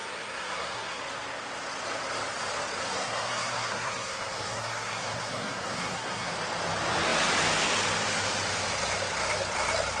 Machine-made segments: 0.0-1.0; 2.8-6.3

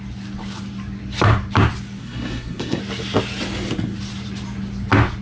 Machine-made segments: 2.0-2.8

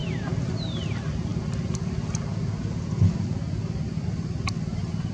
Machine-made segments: none

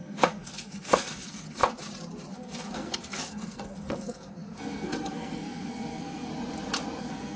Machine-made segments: 0.0-1.6; 2.3-6.3; 7.0-7.4

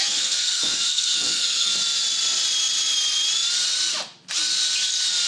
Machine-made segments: 0.0-1.7

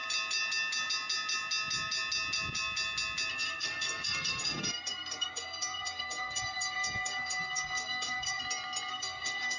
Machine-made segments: 3.3-8.4; 8.9-9.6

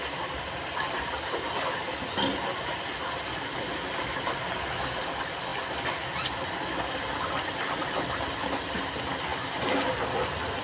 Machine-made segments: none

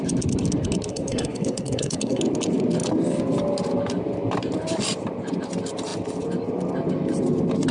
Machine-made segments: 0.9-2.2